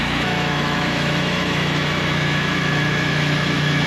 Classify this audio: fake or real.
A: fake